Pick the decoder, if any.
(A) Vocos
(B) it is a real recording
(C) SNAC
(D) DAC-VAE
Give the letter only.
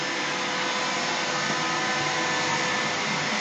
B